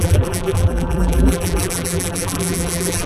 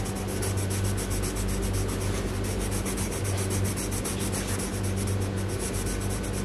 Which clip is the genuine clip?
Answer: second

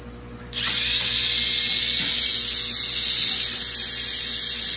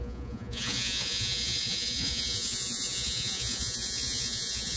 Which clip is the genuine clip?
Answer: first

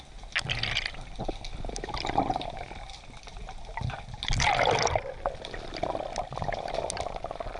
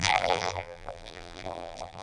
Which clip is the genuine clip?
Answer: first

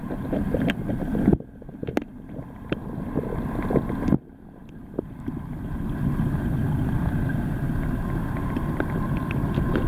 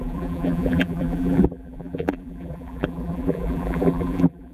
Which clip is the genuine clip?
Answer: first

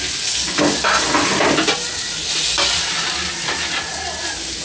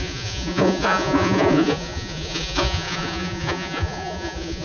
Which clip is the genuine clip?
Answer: first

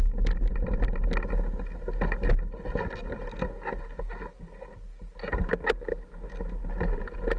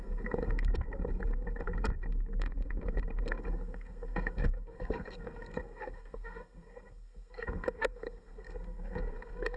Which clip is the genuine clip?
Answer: first